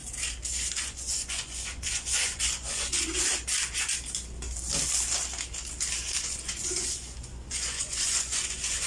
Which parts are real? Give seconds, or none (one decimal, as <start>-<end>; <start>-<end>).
0.0-0.8; 3.1-6.2